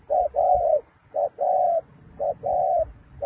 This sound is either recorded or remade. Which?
recorded